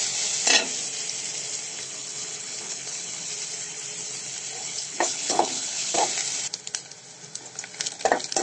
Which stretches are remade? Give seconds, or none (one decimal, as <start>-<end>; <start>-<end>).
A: 1.7-3.3; 4.6-6.0